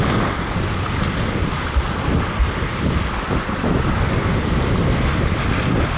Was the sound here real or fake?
real